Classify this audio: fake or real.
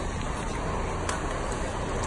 real